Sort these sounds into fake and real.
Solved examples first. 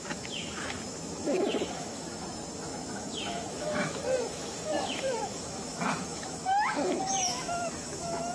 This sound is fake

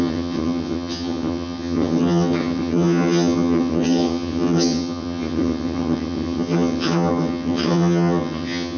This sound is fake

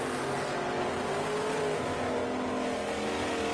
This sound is real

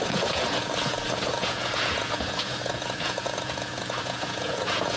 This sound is fake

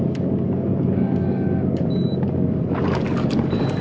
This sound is fake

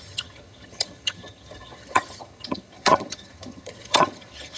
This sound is fake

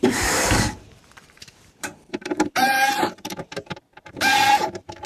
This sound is fake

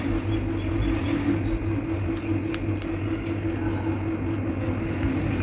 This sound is real